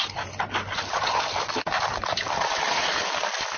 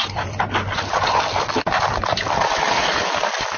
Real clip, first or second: second